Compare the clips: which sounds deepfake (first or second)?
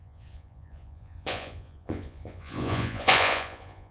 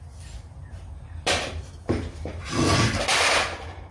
first